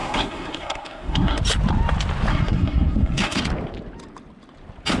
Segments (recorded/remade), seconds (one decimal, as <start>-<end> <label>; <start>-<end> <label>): 0.0-1.4 remade; 1.4-2.3 recorded; 2.3-3.4 remade; 3.4-5.0 recorded